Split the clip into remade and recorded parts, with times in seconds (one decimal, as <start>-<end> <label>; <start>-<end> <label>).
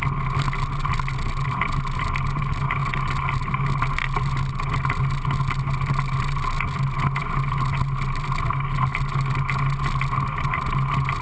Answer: 0.0-11.2 recorded